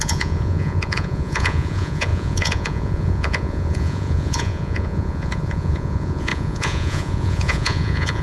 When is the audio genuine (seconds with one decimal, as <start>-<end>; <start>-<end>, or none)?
none